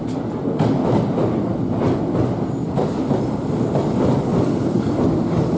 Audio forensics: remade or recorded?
recorded